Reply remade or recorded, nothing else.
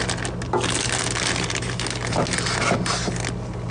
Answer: recorded